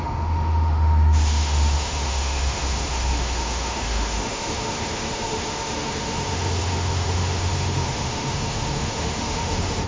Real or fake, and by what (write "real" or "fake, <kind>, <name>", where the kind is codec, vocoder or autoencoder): fake, autoencoder, DAC-VAE